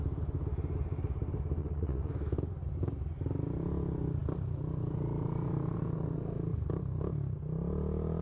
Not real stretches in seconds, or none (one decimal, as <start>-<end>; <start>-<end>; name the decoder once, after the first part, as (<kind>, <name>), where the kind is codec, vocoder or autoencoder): 1.6-2.1 (vocoder, Vocos)